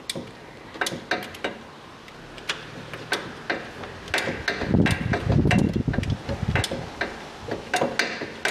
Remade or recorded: recorded